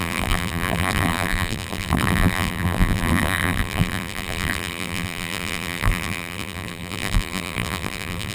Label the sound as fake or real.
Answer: fake